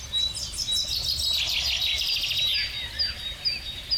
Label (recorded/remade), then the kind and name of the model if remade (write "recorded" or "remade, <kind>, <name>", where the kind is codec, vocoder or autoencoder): recorded